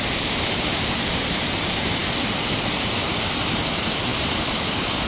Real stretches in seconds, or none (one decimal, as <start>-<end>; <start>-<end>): 0.0-4.1